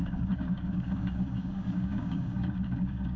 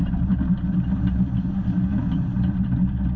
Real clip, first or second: second